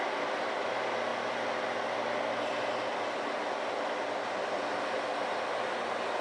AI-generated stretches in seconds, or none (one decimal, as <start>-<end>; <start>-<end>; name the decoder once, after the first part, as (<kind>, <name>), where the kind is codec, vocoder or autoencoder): none